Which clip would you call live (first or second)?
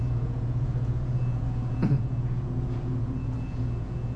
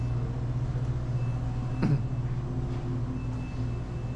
second